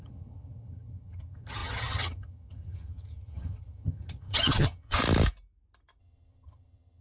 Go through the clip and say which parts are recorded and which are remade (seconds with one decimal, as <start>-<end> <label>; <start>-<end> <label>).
0.0-5.0 remade; 5.0-6.0 recorded; 6.0-7.0 remade